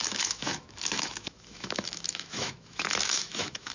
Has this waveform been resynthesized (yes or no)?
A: yes